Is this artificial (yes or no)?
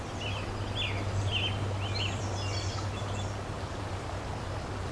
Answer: no